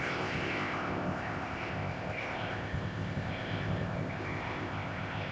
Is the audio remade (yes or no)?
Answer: yes